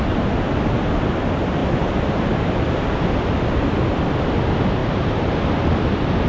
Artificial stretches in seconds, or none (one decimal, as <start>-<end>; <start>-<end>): 4.8-5.4